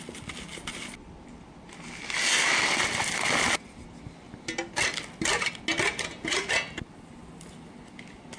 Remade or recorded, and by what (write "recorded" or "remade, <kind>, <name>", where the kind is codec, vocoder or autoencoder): recorded